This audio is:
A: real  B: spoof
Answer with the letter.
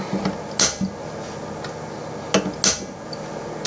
A